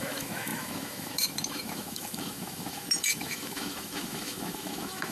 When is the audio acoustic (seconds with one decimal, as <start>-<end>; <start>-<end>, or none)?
none

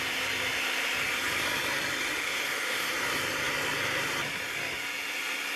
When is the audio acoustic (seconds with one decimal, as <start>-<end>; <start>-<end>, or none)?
0.0-2.2; 2.9-5.6

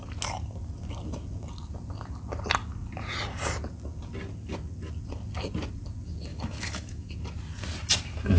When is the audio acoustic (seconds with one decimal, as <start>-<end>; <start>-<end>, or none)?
0.0-6.3; 7.1-8.4

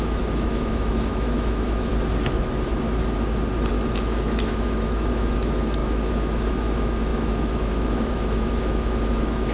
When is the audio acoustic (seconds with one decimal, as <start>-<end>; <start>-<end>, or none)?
1.9-3.7

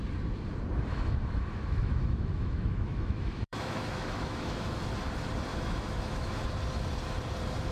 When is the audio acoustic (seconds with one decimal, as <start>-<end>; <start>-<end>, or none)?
0.0-0.9; 4.8-5.5; 6.4-7.7

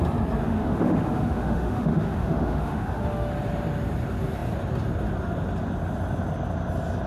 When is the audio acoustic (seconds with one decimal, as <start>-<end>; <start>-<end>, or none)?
0.0-0.4; 3.3-7.1

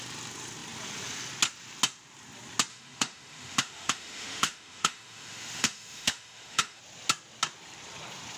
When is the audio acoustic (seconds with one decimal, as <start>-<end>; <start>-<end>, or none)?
0.0-2.7; 6.8-8.4